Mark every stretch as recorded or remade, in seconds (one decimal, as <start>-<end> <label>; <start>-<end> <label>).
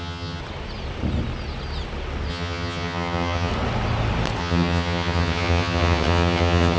0.0-0.4 remade; 0.4-2.3 recorded; 2.3-3.5 remade; 3.5-4.4 recorded; 4.4-6.8 remade